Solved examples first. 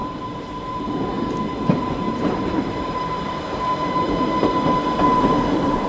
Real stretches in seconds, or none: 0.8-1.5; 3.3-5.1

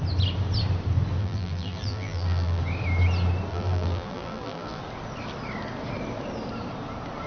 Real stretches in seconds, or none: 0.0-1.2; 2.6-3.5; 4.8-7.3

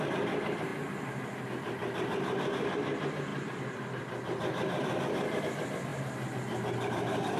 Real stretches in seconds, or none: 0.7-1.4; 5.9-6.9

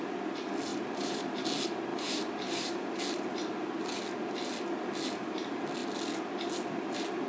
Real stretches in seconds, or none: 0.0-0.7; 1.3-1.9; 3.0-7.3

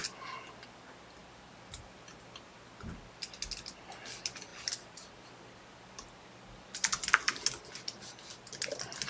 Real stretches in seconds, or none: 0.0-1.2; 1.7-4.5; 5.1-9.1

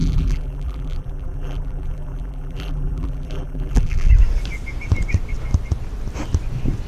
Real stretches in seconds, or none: 4.1-6.9

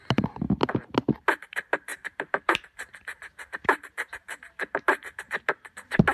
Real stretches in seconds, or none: 0.0-1.9; 5.2-6.1

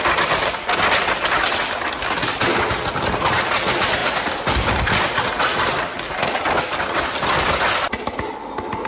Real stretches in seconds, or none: 0.0-2.0; 2.7-4.0; 6.6-8.9